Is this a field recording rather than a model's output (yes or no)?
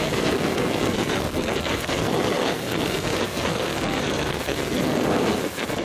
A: no